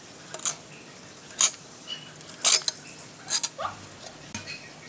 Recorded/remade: recorded